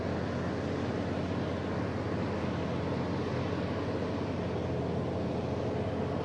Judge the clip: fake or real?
real